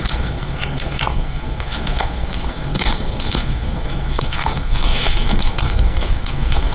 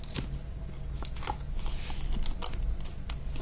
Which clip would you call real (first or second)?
second